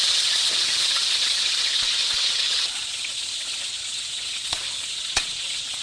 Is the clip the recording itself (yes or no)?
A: no